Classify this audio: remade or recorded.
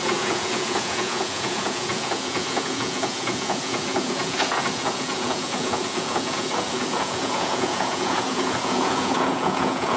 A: remade